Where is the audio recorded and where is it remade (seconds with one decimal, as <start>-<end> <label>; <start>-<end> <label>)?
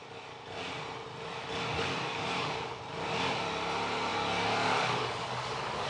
0.0-1.7 recorded; 1.7-2.8 remade; 2.8-4.1 recorded; 4.1-5.9 remade